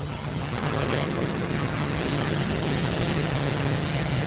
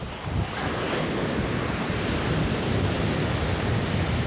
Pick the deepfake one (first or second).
first